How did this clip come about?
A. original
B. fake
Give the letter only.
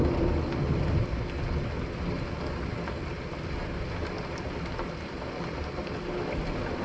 A